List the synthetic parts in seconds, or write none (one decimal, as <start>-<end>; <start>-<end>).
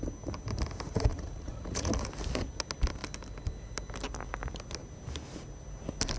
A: 1.1-1.9